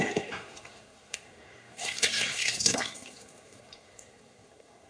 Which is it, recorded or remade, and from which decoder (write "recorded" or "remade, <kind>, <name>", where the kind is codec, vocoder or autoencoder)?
remade, codec, SNAC